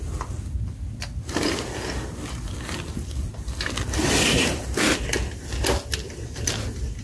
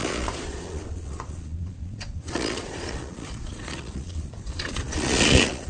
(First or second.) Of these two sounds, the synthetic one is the second